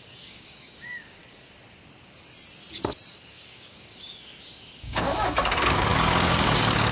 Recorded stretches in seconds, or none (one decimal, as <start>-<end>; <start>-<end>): 1.2-3.1